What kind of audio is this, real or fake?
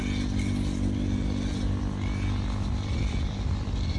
real